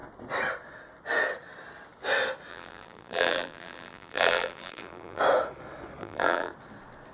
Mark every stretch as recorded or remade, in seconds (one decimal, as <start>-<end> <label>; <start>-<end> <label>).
0.0-2.5 recorded; 2.5-5.2 remade; 5.2-6.0 recorded; 6.0-6.5 remade; 6.5-7.1 recorded